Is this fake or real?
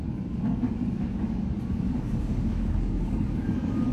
fake